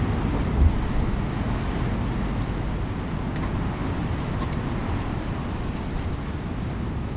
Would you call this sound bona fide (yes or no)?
yes